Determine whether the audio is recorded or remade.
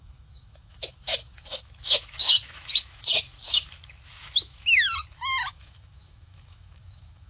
remade